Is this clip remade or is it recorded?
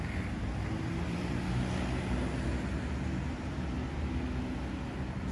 recorded